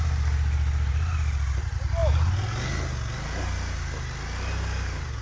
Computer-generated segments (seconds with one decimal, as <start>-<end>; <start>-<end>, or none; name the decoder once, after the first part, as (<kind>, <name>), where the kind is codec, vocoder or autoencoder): none